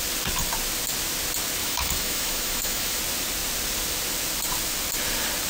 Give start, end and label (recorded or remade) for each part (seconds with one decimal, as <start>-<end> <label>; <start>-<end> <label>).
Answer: 0.0-1.6 recorded; 1.6-3.0 remade; 3.0-5.5 recorded